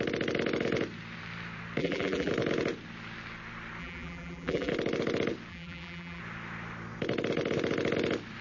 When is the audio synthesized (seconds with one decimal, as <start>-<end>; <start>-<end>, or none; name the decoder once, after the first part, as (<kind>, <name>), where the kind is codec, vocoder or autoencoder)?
1.8-2.3 (vocoder, BigVGAN v2); 3.8-4.7; 5.5-6.2